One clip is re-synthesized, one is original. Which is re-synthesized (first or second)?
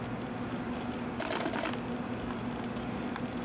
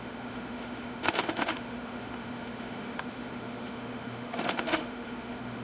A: second